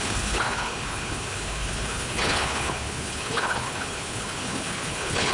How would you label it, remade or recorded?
remade